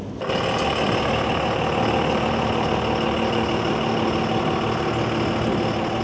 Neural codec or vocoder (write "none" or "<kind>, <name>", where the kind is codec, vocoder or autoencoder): none